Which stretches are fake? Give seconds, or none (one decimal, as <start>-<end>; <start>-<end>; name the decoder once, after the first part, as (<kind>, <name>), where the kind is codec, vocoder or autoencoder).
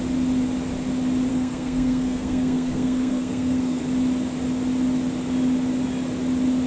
1.3-3.8 (codec, SNAC)